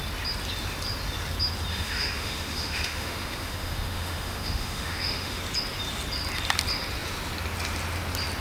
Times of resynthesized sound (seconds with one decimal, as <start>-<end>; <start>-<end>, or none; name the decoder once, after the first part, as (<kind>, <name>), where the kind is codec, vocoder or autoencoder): 1.7-5.4 (autoencoder, DAC-VAE)